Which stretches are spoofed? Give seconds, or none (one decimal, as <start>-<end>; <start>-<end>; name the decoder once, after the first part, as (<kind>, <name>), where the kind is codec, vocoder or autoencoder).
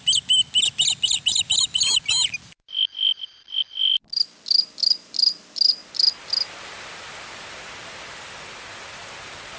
none